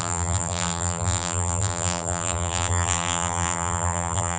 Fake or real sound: fake